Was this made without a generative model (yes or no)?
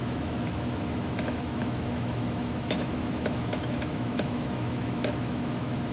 no